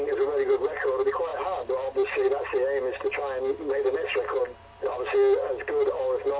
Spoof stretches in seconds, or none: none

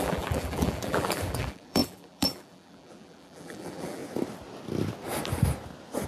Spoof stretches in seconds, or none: 0.0-4.0 (vocoder, BigVGAN v2)

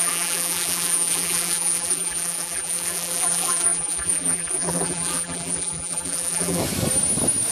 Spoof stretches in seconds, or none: 0.0-6.6 (vocoder, BigVGAN v2)

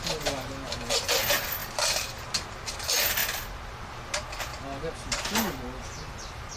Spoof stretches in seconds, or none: none